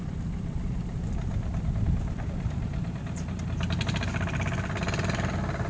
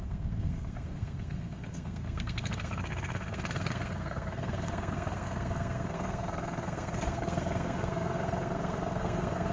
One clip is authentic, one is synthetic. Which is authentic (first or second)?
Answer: first